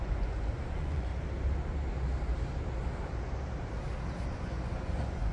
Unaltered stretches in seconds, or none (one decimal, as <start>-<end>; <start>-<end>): 1.1-4.3